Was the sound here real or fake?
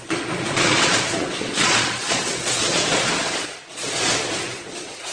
fake